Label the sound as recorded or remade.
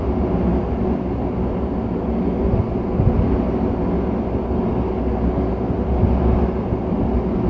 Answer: recorded